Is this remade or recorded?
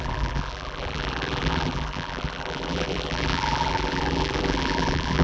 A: remade